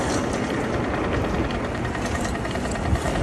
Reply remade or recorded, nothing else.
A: recorded